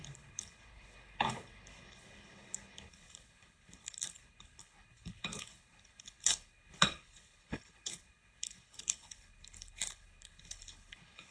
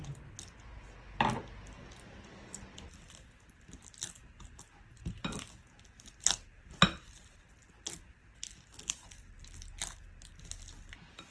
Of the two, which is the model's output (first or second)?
first